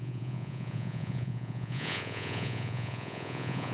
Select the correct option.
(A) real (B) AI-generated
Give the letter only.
B